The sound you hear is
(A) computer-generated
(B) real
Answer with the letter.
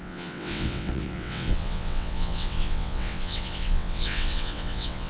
A